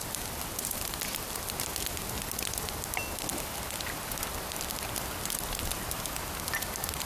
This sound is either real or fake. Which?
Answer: real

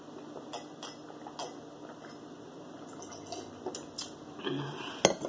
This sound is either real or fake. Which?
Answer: real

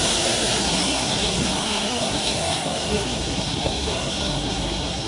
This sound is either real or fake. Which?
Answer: fake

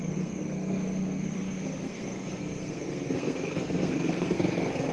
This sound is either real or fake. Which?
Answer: fake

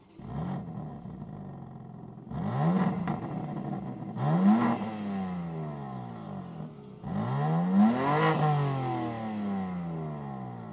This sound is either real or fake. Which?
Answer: real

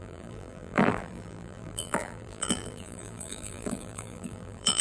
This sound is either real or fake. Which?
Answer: fake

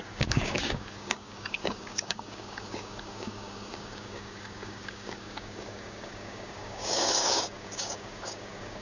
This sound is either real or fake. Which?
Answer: fake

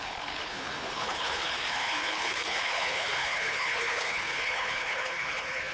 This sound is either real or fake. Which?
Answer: fake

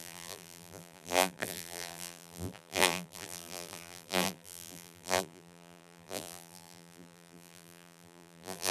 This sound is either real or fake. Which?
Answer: fake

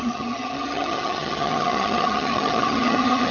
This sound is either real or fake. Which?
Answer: fake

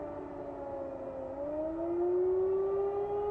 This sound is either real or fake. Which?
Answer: real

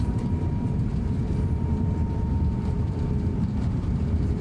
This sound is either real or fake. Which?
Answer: fake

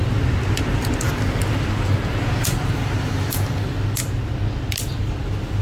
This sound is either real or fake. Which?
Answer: real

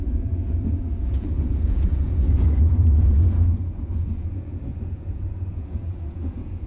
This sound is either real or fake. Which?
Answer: fake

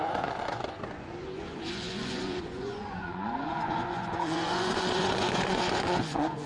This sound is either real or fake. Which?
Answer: fake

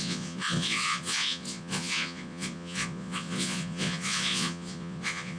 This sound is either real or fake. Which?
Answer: fake